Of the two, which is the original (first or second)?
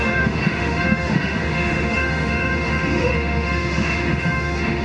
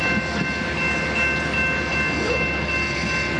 second